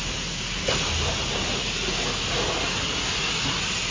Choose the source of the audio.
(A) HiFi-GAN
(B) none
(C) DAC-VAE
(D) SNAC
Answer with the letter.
B